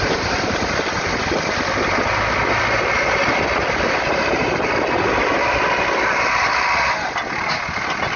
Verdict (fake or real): real